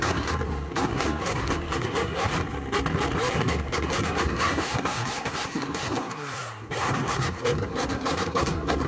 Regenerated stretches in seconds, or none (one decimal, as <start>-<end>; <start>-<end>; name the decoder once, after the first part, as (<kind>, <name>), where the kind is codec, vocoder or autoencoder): 0.0-2.3 (codec, SNAC); 3.3-8.9